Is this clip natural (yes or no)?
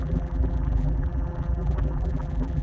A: no